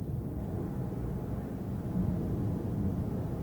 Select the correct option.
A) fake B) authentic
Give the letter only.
B